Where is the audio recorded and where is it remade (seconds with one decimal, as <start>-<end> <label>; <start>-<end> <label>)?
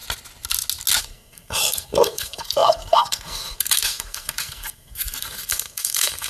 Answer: 0.0-1.0 recorded; 1.0-6.3 remade